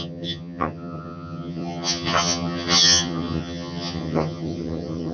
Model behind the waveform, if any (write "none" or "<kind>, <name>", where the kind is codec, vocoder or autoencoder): vocoder, HiFi-GAN